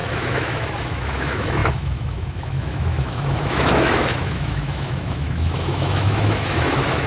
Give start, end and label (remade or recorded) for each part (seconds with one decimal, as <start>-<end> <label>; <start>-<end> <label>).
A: 0.0-7.1 remade